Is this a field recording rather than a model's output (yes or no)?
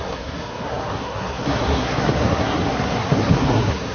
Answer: no